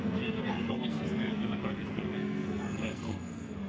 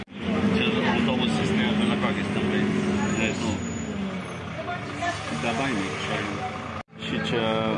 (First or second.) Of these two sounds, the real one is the second